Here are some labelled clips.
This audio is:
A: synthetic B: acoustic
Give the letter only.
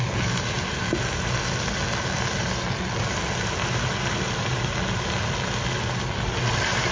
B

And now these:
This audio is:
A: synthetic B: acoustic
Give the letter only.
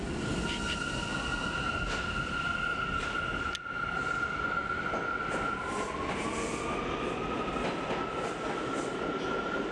B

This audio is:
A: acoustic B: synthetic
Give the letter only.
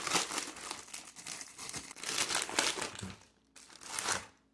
A